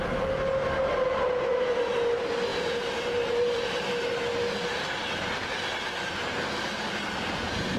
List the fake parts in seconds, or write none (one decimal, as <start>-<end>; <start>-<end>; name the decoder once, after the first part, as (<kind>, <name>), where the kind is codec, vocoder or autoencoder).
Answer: 2.5-4.0 (vocoder, BigVGAN v2)